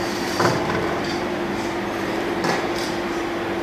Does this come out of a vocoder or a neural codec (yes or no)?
yes